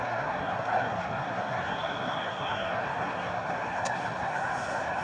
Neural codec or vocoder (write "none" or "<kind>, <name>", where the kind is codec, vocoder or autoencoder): codec, SNAC